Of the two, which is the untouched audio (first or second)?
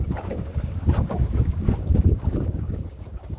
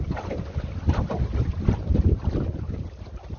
second